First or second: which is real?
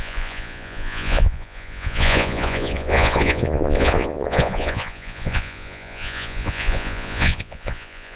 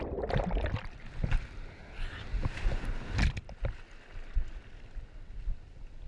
second